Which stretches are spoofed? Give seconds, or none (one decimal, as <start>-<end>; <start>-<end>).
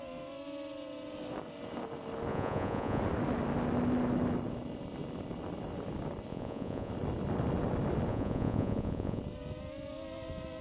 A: 2.3-3.0; 6.3-6.9; 8.1-9.2